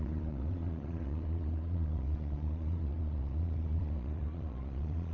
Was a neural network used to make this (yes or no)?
yes